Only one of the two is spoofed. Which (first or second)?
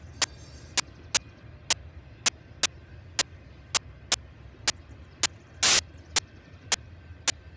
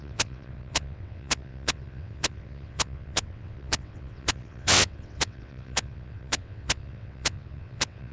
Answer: second